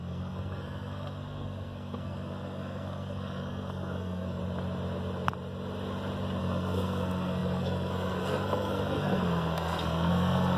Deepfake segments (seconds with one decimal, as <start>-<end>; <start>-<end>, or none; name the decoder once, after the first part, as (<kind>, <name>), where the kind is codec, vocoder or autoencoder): 0.0-4.4 (codec, SNAC); 6.4-10.6